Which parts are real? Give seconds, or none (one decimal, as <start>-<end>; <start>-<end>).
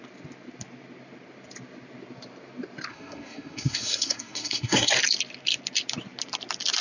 0.0-2.9; 4.9-6.8